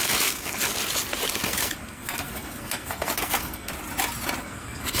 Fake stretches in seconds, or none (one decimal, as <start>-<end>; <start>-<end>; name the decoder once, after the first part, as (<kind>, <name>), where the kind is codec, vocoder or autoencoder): 0.0-0.7 (codec, SNAC); 1.4-3.7; 4.4-5.0